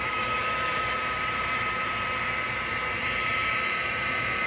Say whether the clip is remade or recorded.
remade